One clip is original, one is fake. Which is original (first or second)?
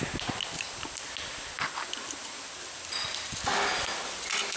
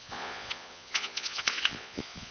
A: first